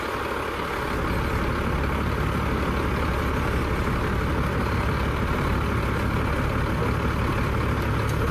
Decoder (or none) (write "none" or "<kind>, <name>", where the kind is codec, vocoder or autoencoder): none